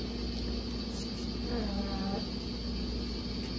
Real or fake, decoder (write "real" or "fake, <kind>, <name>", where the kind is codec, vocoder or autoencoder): real